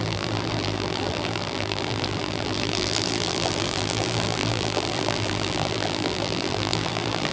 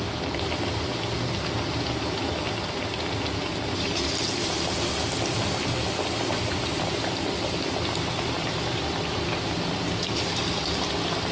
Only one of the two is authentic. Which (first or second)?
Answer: second